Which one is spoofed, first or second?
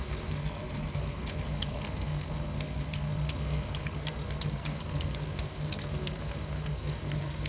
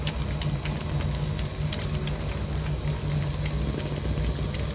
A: first